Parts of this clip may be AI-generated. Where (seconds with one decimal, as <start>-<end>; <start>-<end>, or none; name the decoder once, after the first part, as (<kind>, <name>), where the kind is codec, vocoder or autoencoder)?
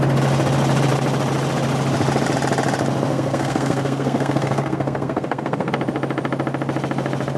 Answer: 3.1-5.7 (codec, SNAC)